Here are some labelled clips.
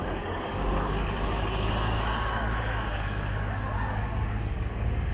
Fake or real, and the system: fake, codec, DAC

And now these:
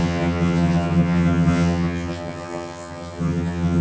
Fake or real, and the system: fake, vocoder, HiFi-GAN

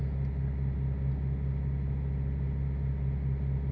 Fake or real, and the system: real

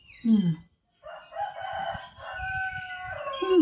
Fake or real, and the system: real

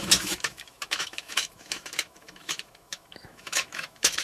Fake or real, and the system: fake, autoencoder, DAC-VAE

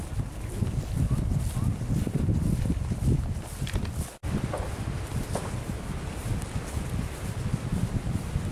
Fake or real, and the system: real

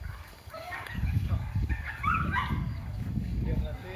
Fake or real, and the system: fake, codec, DAC